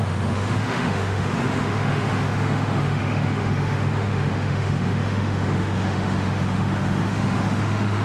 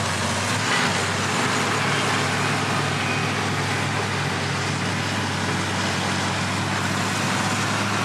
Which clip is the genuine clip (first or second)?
second